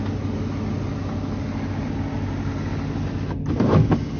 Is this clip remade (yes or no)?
no